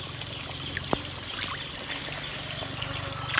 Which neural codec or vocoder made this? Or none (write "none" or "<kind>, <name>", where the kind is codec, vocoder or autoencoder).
none